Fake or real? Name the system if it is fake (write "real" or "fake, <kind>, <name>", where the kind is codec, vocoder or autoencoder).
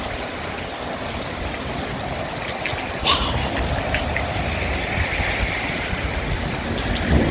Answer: real